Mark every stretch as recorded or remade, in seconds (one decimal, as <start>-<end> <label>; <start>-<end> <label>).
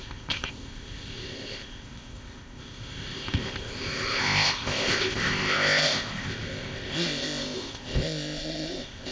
0.0-9.1 remade